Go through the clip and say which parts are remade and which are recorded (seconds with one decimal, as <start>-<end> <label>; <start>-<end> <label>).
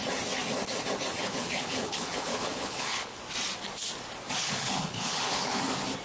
0.0-1.2 recorded; 1.2-3.2 remade; 3.2-4.4 recorded; 4.4-5.6 remade; 5.6-6.0 recorded